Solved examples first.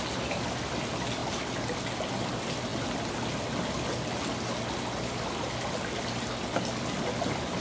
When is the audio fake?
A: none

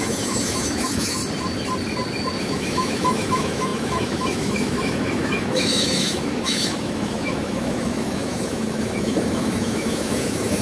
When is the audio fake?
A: 0.0-1.2; 2.4-10.6

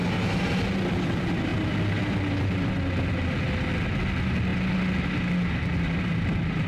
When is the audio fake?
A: none

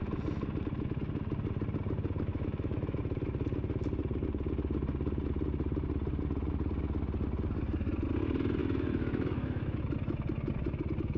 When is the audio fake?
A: 2.3-3.0; 8.6-9.8

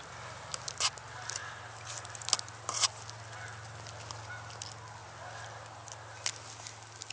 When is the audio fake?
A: none

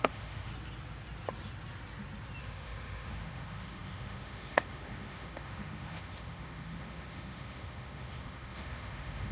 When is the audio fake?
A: 0.0-0.5; 2.4-9.3

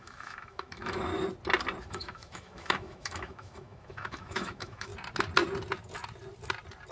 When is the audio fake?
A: 0.0-1.1; 1.9-4.9

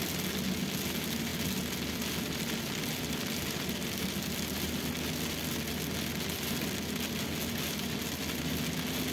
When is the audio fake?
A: none